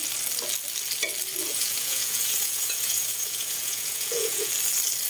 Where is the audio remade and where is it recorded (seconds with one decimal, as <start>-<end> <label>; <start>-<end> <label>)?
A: 0.0-1.4 recorded; 1.4-4.5 remade; 4.5-5.1 recorded